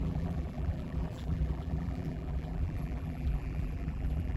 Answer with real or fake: fake